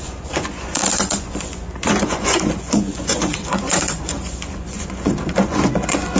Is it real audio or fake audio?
fake